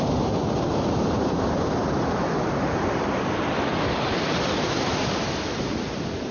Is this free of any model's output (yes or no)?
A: no